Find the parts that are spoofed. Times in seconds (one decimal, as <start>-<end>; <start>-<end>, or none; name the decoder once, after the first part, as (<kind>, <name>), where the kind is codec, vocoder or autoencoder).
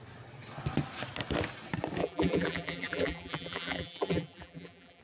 2.0-5.0 (vocoder, BigVGAN v2)